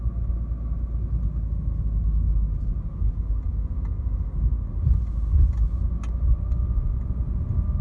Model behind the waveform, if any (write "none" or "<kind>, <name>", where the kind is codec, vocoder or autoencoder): none